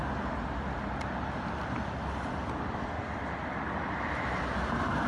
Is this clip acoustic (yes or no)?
yes